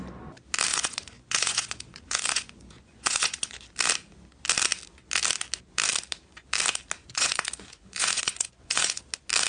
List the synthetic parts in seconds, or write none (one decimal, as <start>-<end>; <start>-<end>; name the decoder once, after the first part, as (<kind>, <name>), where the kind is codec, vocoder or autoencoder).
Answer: 0.7-3.7 (vocoder, Vocos); 7.0-9.0